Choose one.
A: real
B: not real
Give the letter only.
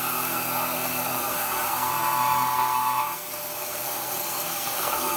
B